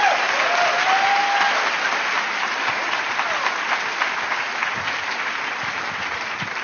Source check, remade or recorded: recorded